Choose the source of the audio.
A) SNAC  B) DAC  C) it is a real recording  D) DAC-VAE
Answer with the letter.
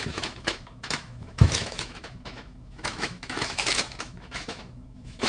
D